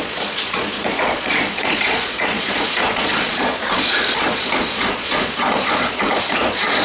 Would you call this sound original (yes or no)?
no